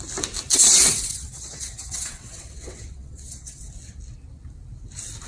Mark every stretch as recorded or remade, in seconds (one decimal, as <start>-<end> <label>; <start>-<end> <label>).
0.0-0.5 recorded; 0.5-3.7 remade; 3.7-5.3 recorded